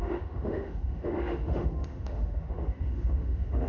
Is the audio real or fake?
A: fake